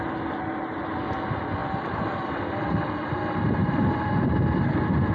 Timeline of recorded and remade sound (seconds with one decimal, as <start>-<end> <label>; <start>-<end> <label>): 0.0-1.6 recorded; 1.6-2.7 remade; 2.7-3.6 recorded; 3.6-4.1 remade; 4.1-5.1 recorded